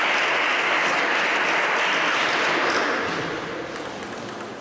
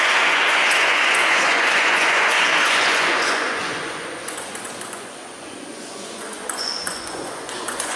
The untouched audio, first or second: first